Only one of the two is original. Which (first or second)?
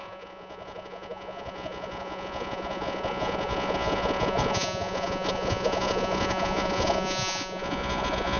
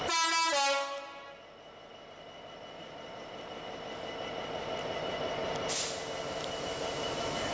second